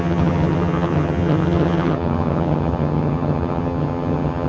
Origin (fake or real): fake